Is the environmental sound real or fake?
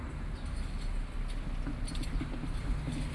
real